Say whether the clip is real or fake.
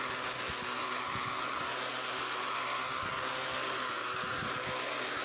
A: real